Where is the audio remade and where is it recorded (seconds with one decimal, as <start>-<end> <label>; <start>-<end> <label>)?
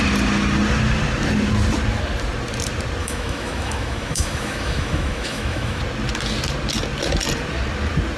0.0-3.0 recorded; 3.0-5.8 remade; 5.8-8.2 recorded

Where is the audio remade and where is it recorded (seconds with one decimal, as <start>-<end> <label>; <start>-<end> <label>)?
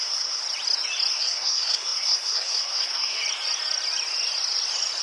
0.0-0.4 remade; 0.4-1.1 recorded; 1.1-3.2 remade; 3.2-5.0 recorded